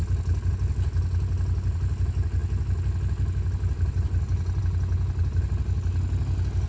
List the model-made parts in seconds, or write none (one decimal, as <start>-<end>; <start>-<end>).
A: none